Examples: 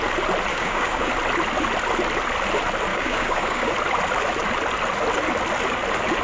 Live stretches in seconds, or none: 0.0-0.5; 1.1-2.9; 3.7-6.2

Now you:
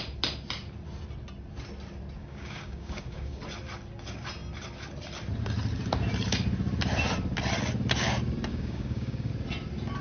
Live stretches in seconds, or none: 0.0-2.2; 3.4-8.5; 9.3-10.0